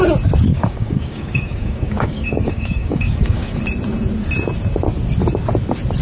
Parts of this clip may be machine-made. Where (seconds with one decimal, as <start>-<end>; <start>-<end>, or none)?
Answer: 0.5-3.6